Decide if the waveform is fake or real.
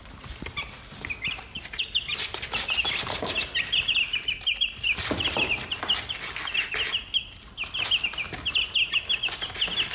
real